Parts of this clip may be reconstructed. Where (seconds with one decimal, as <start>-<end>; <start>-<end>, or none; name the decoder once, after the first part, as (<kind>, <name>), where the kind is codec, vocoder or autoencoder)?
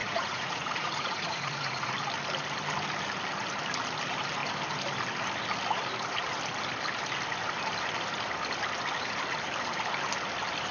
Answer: 0.0-1.9 (vocoder, Vocos)